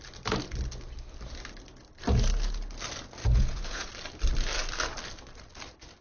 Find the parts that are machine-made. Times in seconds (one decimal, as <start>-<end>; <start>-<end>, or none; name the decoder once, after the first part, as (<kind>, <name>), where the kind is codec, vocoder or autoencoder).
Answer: 3.2-3.9 (vocoder, Vocos)